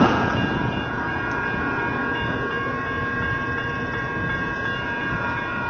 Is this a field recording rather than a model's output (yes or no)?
no